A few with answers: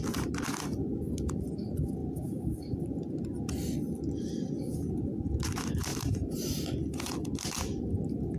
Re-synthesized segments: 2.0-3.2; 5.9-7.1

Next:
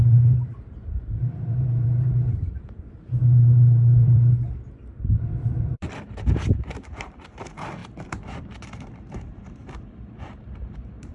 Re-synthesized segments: 0.0-11.1

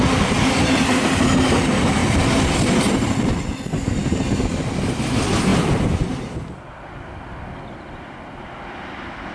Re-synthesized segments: 5.5-6.6

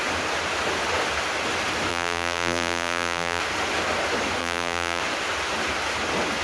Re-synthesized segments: 1.9-3.4; 4.4-5.0

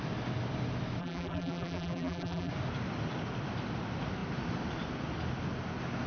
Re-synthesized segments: 1.0-2.5